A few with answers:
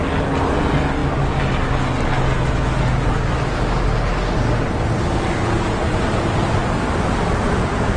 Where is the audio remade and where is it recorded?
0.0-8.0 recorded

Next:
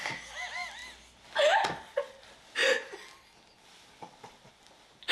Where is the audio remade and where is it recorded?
0.0-5.1 recorded

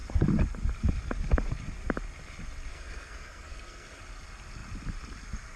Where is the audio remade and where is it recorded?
0.0-2.7 recorded; 2.7-4.0 remade; 4.0-5.6 recorded

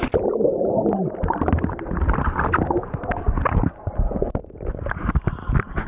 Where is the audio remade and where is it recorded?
0.0-5.9 recorded